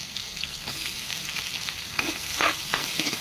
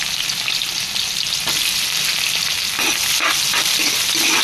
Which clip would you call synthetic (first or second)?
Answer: first